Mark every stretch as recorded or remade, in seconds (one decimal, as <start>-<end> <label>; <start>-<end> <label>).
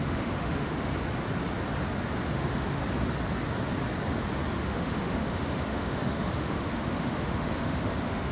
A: 0.0-0.9 remade; 0.9-2.3 recorded; 2.3-2.8 remade; 2.8-4.6 recorded; 4.6-8.3 remade